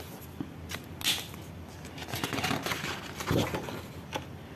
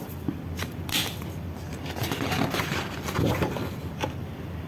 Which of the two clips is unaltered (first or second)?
first